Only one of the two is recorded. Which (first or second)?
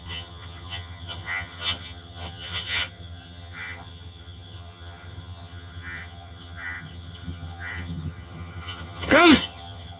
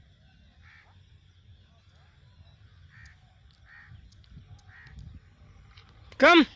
second